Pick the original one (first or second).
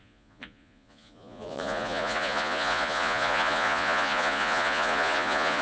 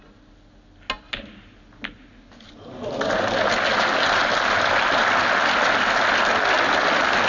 second